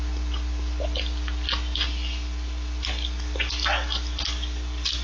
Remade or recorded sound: remade